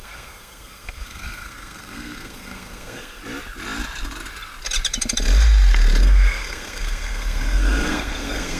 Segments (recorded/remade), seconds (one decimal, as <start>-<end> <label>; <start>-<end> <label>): 0.0-3.2 remade; 3.2-6.0 recorded; 6.0-8.6 remade